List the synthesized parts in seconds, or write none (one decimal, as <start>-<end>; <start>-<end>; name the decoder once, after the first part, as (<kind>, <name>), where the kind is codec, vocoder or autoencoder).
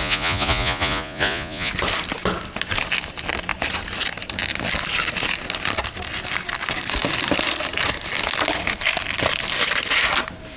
0.0-1.7 (vocoder, Vocos)